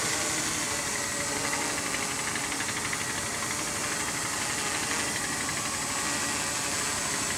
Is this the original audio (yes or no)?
yes